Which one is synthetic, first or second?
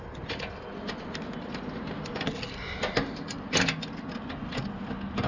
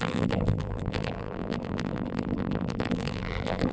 second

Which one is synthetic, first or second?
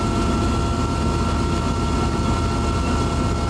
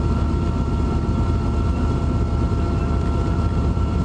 second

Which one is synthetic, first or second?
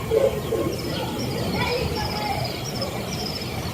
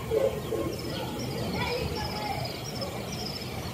first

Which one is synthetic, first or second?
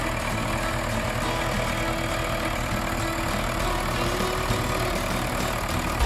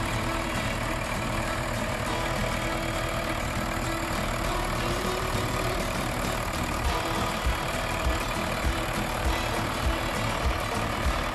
second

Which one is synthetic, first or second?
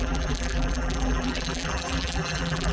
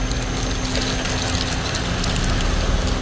first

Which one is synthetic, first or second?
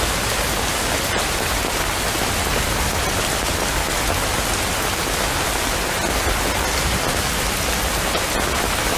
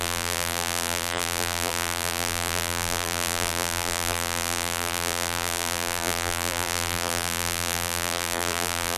second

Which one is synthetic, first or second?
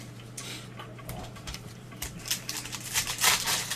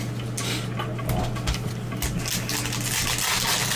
first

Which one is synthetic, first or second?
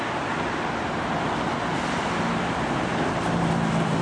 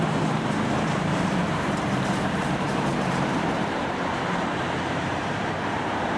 second